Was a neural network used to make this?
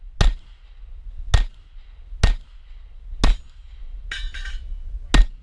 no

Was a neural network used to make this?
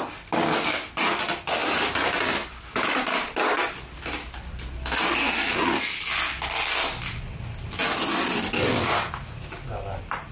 no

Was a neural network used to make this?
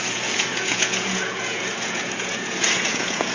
yes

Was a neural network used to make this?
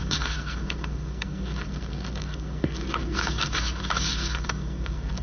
yes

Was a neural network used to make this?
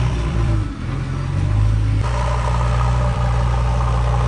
yes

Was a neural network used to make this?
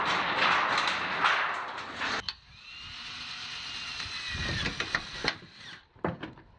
no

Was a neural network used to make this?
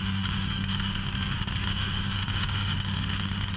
yes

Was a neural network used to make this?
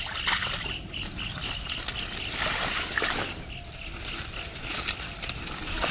no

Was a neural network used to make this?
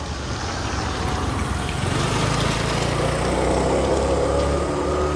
no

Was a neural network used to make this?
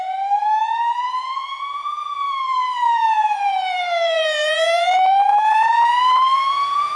yes